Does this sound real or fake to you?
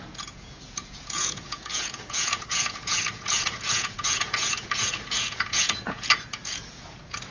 fake